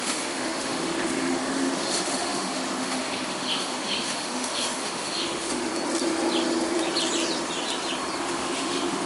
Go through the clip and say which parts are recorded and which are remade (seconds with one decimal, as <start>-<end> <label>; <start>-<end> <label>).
0.0-5.7 remade; 5.7-8.2 recorded; 8.2-9.1 remade